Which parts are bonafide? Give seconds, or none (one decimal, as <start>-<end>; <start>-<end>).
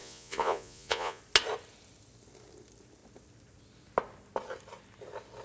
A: 1.2-5.4